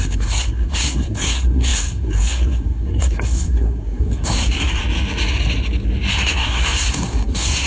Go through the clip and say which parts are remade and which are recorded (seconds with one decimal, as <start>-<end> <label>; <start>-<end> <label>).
0.0-4.8 remade; 4.8-6.1 recorded; 6.1-7.7 remade